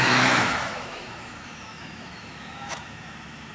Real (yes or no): no